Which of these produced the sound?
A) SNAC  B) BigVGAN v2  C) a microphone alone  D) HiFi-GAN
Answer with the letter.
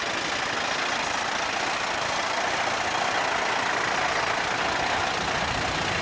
C